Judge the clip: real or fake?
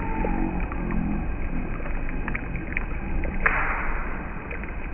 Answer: real